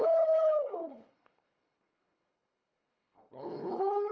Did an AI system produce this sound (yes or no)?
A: yes